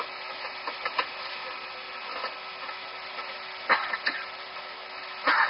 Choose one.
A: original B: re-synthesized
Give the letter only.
A